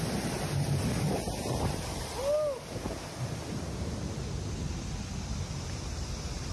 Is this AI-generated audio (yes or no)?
no